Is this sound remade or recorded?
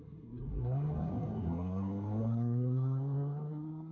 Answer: remade